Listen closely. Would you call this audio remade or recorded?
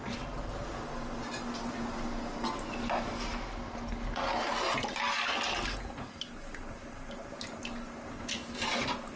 recorded